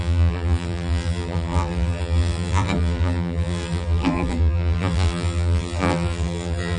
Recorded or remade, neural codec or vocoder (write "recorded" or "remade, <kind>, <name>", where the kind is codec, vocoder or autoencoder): remade, vocoder, BigVGAN v2